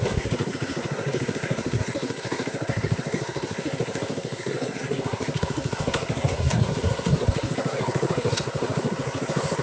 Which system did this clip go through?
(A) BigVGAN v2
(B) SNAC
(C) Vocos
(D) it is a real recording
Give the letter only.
B